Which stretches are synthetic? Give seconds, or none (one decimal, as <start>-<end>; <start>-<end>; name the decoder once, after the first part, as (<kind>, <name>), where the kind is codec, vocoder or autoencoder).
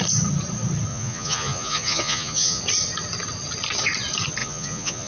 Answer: 0.9-2.6 (vocoder, Vocos); 4.4-5.1